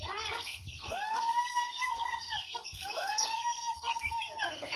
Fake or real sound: fake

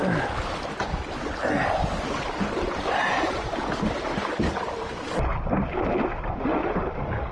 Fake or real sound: real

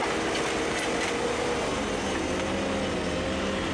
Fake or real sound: real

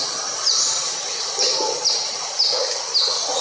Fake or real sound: real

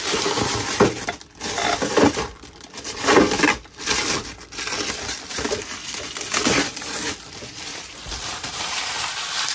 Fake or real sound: fake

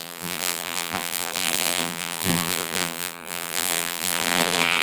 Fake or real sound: fake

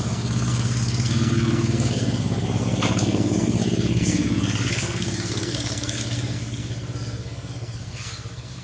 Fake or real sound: fake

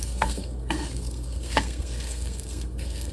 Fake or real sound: fake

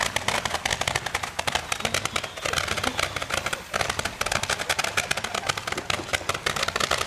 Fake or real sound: real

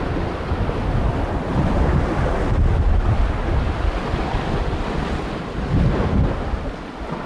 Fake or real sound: real